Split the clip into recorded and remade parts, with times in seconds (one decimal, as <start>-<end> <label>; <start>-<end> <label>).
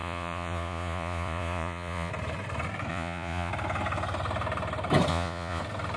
0.0-2.1 remade; 2.1-2.9 recorded; 2.9-3.5 remade; 3.5-5.1 recorded; 5.1-5.6 remade; 5.6-6.0 recorded